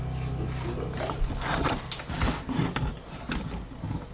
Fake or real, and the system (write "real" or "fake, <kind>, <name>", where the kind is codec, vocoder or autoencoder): real